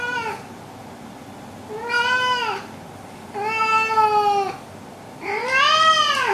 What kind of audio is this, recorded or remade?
recorded